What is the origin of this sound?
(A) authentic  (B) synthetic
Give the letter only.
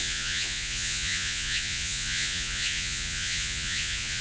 B